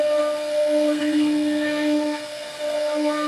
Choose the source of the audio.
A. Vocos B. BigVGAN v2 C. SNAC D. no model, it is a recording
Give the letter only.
C